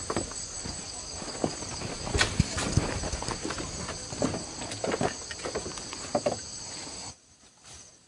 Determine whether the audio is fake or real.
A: real